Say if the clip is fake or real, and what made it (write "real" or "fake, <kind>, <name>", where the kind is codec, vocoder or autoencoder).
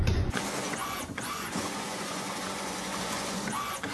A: fake, vocoder, Vocos